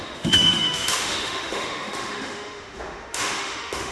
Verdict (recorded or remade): remade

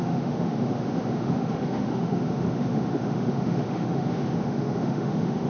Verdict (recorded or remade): remade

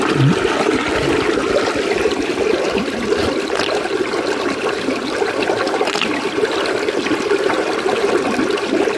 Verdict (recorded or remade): recorded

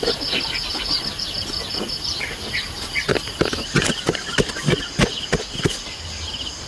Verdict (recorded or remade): recorded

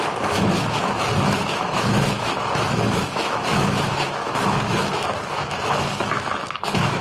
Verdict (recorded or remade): remade